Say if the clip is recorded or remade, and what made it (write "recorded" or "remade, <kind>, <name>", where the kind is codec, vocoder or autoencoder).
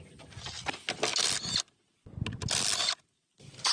recorded